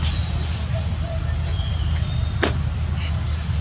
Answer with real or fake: real